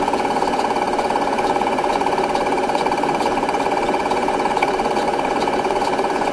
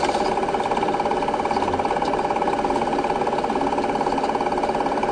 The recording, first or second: second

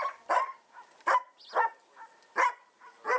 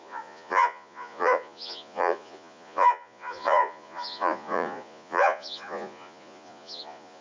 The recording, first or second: first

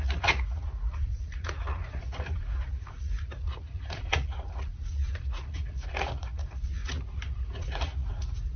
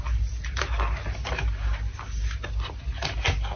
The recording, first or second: second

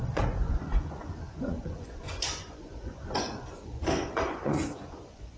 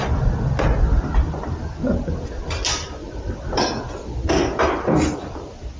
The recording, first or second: second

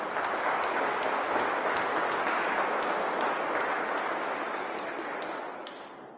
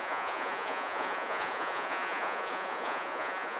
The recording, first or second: first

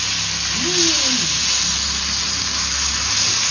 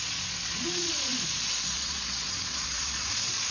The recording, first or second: first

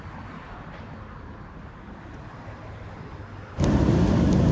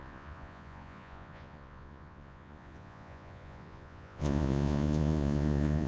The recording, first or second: first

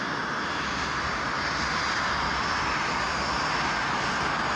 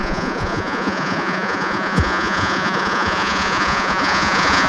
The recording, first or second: first